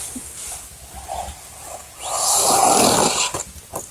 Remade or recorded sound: recorded